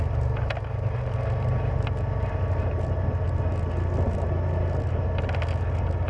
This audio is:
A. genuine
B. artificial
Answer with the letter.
A